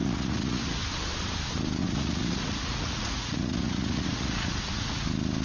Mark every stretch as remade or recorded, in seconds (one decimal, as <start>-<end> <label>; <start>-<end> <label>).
0.0-0.8 remade; 0.8-1.8 recorded; 1.8-5.0 remade; 5.0-5.4 recorded

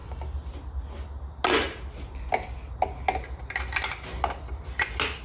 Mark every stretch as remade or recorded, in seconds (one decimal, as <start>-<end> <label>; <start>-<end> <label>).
0.0-5.2 recorded

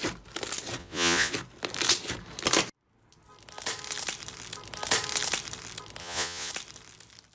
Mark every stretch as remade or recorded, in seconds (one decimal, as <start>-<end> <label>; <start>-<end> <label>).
0.0-0.8 recorded; 0.8-1.3 remade; 1.3-6.0 recorded; 6.0-6.5 remade; 6.5-7.3 recorded

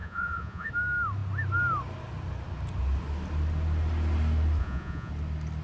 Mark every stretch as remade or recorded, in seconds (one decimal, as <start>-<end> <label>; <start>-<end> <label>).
0.0-0.7 remade; 0.7-4.6 recorded; 4.6-5.1 remade; 5.1-5.6 recorded

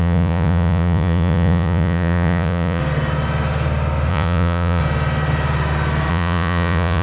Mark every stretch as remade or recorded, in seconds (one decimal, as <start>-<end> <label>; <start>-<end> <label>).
0.0-2.8 remade; 2.8-4.1 recorded; 4.1-4.8 remade; 4.8-6.1 recorded; 6.1-7.0 remade

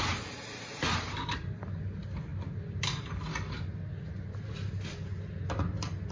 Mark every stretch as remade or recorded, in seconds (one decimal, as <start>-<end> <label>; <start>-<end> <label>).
0.0-6.1 recorded

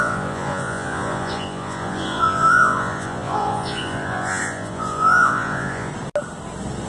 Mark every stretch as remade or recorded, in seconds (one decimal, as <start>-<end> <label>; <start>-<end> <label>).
0.0-5.9 remade; 5.9-6.9 recorded

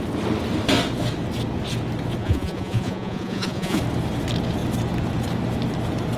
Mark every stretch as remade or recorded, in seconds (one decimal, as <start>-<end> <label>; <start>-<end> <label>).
0.0-2.2 recorded; 2.2-3.8 remade; 3.8-6.2 recorded